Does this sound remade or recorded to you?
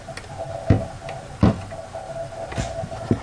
recorded